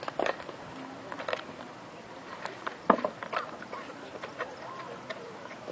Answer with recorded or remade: recorded